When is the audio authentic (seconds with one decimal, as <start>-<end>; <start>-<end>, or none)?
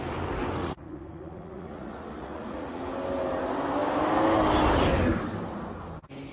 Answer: 0.0-0.6; 2.8-6.3